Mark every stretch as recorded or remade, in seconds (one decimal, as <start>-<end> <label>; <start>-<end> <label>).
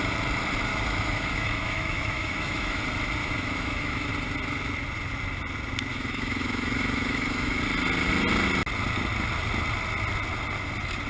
0.0-0.7 recorded; 0.7-2.8 remade; 2.8-3.2 recorded; 3.2-4.1 remade; 4.1-5.9 recorded; 5.9-7.6 remade; 7.6-11.1 recorded